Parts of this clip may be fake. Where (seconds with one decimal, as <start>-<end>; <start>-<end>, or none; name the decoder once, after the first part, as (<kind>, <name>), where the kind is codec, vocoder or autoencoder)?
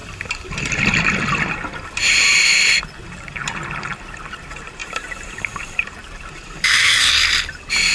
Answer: 4.8-7.0 (vocoder, BigVGAN v2)